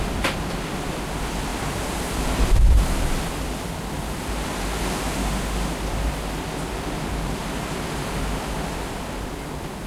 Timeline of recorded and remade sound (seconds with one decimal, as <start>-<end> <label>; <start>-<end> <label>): 0.0-5.2 recorded; 5.2-5.8 remade; 5.8-9.9 recorded